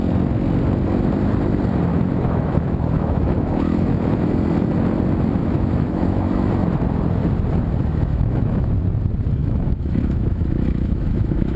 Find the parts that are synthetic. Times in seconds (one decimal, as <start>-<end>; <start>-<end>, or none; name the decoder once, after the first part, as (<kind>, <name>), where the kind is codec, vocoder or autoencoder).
1.9-4.3 (autoencoder, DAC-VAE); 5.4-6.5; 8.1-8.7; 9.4-11.6